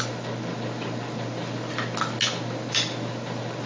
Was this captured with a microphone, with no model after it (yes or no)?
yes